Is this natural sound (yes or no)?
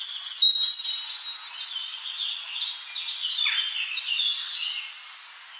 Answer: yes